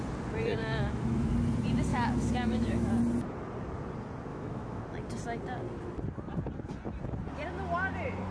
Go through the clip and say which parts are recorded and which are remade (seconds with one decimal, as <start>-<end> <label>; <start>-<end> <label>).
0.0-0.6 recorded; 0.6-1.3 remade; 1.3-1.9 recorded; 1.9-2.9 remade; 2.9-4.3 recorded; 4.3-4.8 remade; 4.8-8.3 recorded